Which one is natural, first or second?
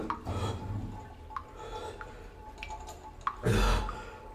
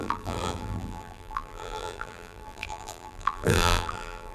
first